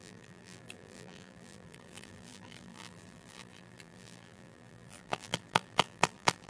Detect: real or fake fake